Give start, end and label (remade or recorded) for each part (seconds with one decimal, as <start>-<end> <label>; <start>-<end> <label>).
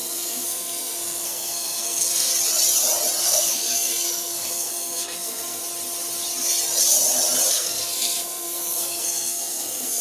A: 0.0-2.3 remade; 2.3-3.2 recorded; 3.2-5.6 remade; 5.6-7.5 recorded; 7.5-10.0 remade